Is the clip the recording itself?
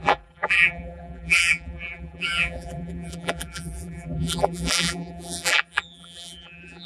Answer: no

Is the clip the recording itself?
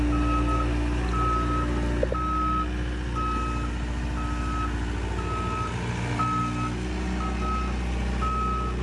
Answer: yes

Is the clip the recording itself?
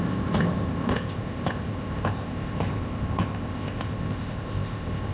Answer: no